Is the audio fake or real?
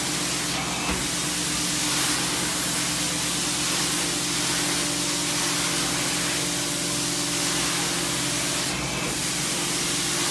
real